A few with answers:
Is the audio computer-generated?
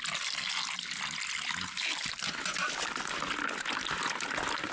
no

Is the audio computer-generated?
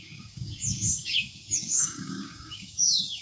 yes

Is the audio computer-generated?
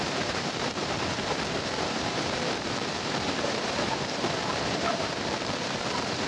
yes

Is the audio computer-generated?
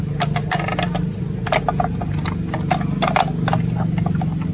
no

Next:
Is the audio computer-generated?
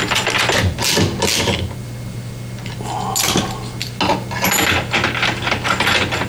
no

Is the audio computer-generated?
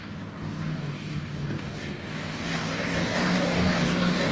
yes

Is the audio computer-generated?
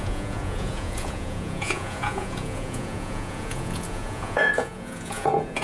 yes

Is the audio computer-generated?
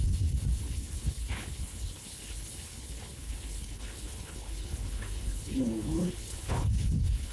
yes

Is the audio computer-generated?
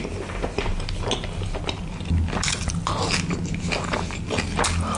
no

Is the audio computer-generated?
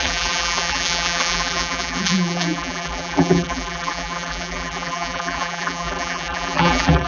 yes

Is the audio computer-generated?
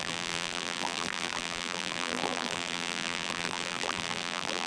yes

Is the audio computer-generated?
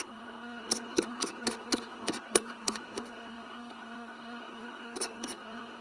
yes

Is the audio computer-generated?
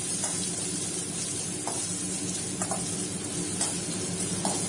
no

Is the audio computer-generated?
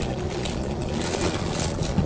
yes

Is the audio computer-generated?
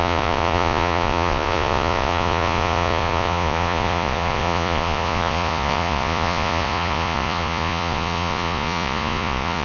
yes